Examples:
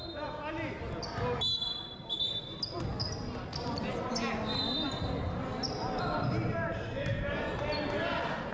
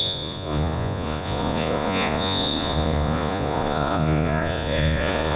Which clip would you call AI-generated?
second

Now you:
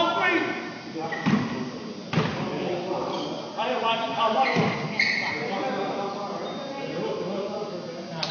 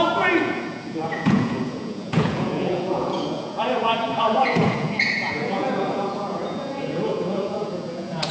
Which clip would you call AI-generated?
second